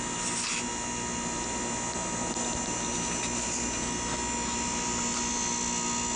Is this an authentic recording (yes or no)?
yes